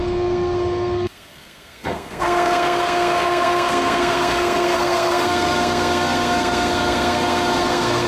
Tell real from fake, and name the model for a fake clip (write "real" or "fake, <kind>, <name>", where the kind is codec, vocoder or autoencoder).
fake, codec, SNAC